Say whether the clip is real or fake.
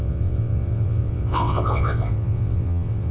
fake